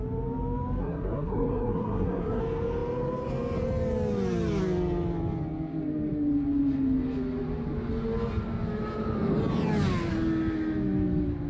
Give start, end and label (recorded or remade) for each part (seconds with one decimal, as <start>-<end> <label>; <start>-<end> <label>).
0.0-0.8 recorded; 0.8-2.4 remade; 2.4-11.5 recorded